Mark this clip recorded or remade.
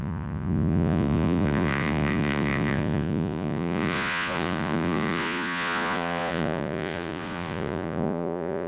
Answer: remade